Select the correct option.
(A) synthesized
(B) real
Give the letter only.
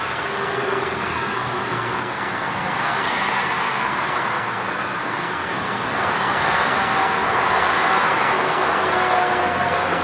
A